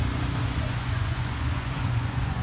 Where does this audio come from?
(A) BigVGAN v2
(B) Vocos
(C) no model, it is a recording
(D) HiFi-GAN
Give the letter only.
B